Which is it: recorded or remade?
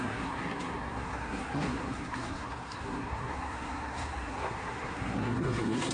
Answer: remade